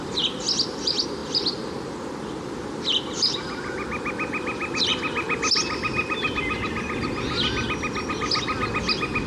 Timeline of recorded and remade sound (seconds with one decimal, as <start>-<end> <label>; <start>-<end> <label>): 0.0-9.3 recorded